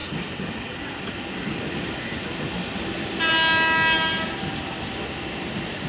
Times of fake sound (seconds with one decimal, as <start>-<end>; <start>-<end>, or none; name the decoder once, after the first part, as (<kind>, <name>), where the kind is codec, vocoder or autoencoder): none